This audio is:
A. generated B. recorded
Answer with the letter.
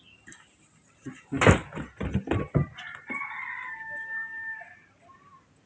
B